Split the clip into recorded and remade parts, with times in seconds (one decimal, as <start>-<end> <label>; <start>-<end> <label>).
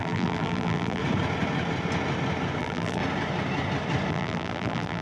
0.0-1.0 remade; 1.0-2.6 recorded; 2.6-3.0 remade; 3.0-4.1 recorded; 4.1-5.0 remade